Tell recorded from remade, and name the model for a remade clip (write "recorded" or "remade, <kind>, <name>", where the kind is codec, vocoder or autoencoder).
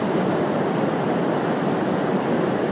recorded